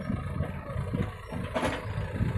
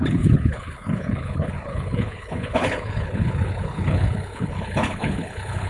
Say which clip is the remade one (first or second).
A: second